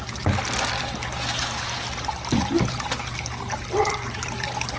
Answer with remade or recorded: recorded